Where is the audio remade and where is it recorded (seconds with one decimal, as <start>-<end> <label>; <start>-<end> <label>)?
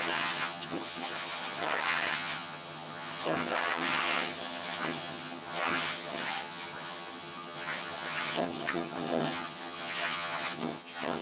0.0-11.2 remade